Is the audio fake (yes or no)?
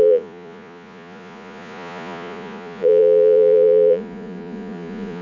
yes